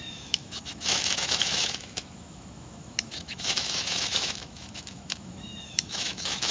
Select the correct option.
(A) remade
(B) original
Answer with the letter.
A